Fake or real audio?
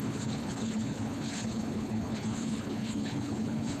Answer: fake